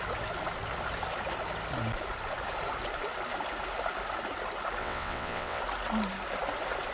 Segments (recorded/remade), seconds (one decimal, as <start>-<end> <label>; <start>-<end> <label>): 0.0-4.8 recorded; 4.8-5.6 remade; 5.6-6.9 recorded